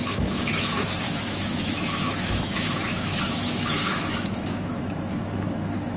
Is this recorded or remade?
remade